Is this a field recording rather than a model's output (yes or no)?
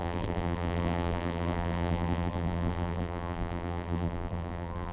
no